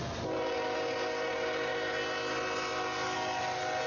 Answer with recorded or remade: recorded